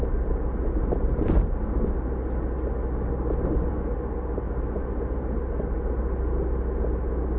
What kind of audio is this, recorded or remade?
recorded